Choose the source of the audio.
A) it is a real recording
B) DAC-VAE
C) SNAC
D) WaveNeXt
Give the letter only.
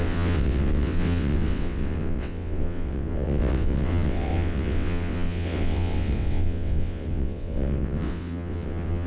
D